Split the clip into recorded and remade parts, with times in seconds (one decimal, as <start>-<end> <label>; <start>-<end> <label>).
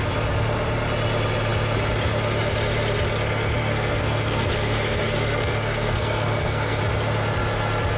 0.0-3.6 recorded; 3.6-6.8 remade; 6.8-8.0 recorded